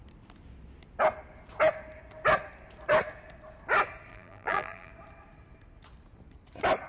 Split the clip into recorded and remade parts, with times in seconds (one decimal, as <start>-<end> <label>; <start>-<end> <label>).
0.0-4.1 recorded; 4.1-4.9 remade; 4.9-6.9 recorded